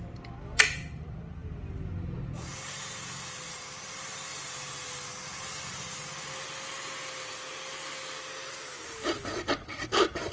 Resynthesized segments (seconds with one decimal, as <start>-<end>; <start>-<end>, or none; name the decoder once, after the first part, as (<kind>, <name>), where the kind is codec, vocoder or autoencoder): none